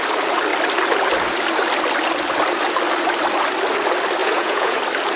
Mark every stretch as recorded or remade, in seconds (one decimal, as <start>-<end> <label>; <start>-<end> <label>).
0.0-4.2 recorded; 4.2-4.8 remade; 4.8-5.2 recorded